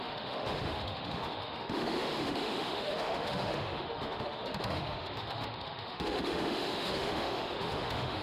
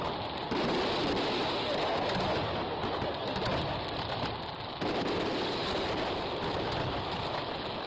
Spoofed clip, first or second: first